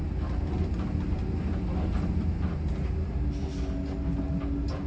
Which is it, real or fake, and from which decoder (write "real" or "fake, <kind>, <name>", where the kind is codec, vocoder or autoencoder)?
real